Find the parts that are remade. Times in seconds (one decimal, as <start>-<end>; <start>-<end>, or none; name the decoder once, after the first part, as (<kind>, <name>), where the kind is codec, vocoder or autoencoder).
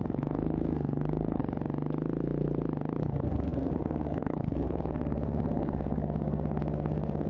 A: 0.0-1.4 (codec, SNAC); 3.0-7.3